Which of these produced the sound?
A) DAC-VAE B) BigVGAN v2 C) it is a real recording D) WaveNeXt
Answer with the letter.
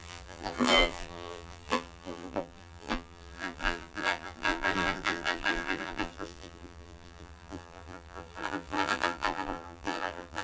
B